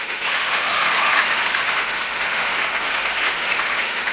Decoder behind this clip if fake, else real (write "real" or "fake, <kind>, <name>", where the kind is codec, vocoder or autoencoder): fake, autoencoder, DAC-VAE